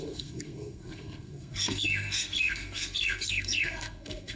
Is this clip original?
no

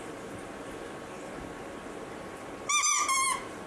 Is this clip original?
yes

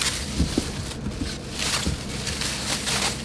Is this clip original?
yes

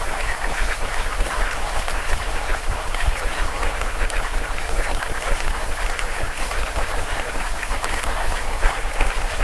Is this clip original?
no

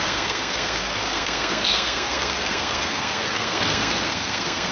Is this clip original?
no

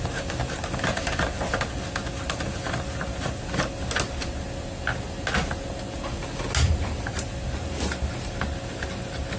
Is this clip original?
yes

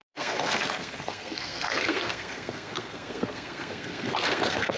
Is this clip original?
no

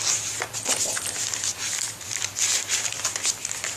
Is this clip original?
yes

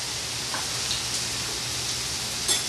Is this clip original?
yes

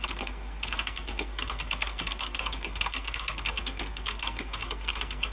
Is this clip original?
no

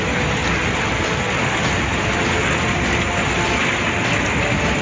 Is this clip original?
yes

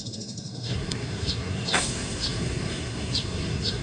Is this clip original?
no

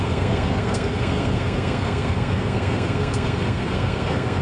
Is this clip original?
no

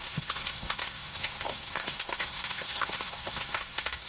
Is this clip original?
no